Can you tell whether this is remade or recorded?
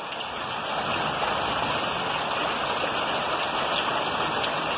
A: recorded